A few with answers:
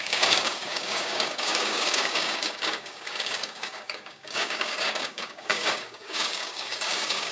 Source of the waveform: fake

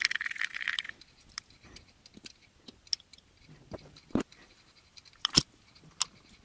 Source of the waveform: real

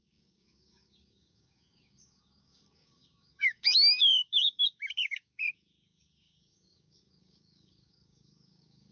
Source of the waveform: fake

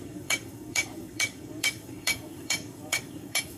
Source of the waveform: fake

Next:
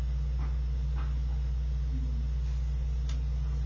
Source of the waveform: real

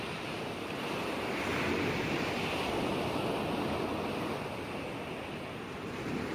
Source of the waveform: real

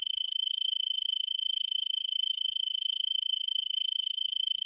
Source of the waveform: fake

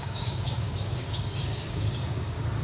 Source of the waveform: fake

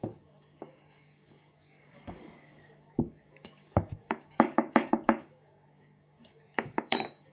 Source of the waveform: fake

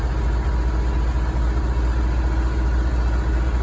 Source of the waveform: real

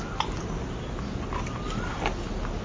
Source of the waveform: real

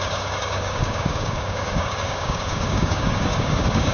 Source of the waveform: fake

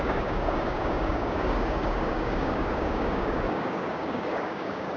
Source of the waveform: fake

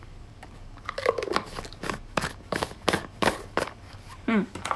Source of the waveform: fake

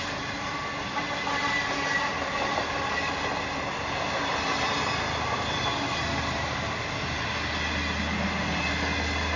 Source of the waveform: real